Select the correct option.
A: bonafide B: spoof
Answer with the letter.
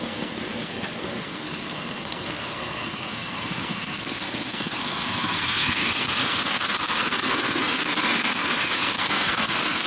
B